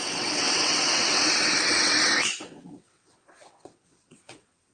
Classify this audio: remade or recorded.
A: remade